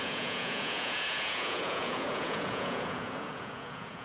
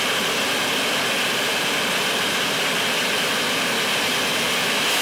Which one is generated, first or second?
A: first